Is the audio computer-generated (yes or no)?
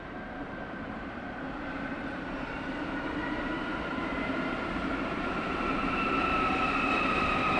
yes